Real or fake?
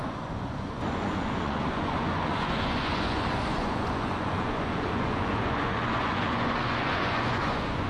fake